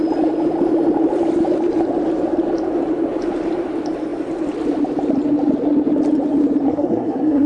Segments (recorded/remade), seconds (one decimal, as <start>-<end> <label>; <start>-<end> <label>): 0.0-6.7 recorded; 6.7-7.5 remade